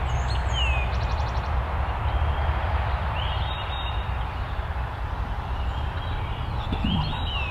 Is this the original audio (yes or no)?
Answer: yes